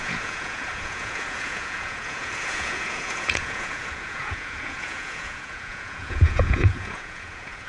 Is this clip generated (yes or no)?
yes